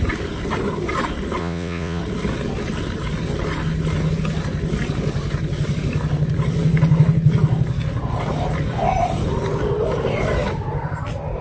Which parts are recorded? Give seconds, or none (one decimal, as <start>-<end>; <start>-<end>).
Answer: 0.0-1.4; 2.0-11.4